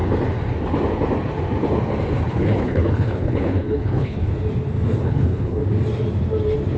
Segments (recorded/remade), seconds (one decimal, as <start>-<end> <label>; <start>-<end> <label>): 0.0-2.2 recorded; 2.2-4.3 remade; 4.3-5.0 recorded; 5.0-5.6 remade; 5.6-6.8 recorded